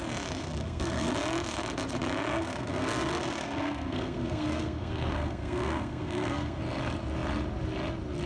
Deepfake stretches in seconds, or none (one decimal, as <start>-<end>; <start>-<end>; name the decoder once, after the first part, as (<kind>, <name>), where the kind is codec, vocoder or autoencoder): 0.4-1.1 (codec, SNAC); 2.3-6.6